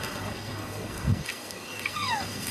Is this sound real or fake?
fake